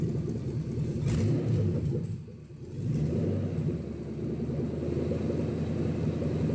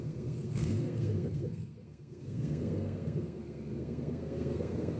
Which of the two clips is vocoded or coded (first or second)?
second